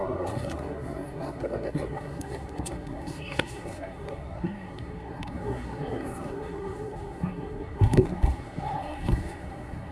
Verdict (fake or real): fake